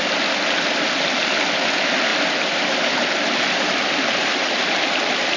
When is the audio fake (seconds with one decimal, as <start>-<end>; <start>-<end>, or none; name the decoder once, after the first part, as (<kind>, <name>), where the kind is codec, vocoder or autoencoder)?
none